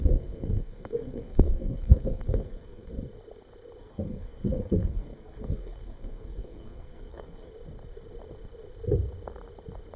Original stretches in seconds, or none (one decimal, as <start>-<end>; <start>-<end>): 2.9-3.8; 7.5-10.0